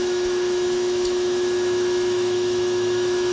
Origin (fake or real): fake